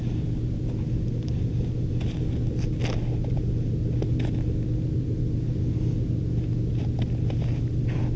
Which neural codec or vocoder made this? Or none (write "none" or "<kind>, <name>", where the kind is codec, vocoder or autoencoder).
none